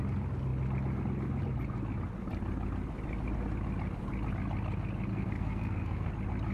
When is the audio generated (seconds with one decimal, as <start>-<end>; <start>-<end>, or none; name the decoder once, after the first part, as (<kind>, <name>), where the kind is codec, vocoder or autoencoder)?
5.1-6.1 (codec, SNAC)